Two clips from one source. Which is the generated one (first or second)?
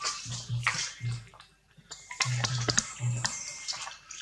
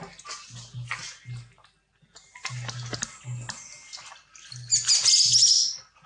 first